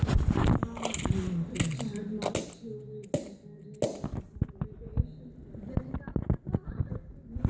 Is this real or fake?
real